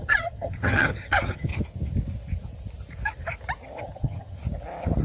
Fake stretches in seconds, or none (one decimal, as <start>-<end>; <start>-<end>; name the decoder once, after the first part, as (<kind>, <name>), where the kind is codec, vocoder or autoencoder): 0.0-1.5 (vocoder, HiFi-GAN); 3.8-4.4